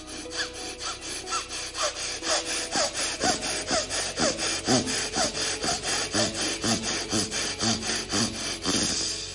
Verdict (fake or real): real